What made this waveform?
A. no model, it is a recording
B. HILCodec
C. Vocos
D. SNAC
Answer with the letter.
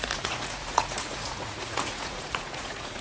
C